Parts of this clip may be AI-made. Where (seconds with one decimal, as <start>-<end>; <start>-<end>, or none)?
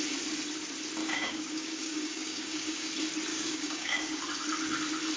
1.0-2.9; 3.3-4.2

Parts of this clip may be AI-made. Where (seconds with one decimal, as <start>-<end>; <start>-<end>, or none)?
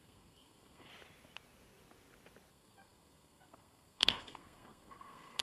0.0-0.9; 2.5-5.4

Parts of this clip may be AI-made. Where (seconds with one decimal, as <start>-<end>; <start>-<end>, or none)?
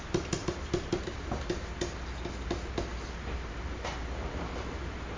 none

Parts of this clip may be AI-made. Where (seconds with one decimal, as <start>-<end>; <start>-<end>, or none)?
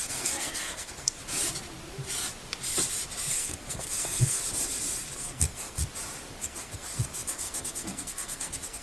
0.0-1.2; 3.3-4.4; 5.1-5.8; 6.4-8.8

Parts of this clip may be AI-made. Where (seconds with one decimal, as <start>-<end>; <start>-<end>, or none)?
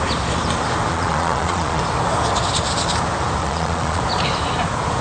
0.9-1.8; 3.4-4.0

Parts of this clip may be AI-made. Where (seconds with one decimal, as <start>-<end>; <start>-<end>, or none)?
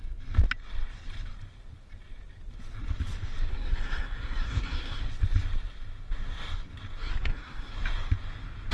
3.5-5.0; 7.0-7.7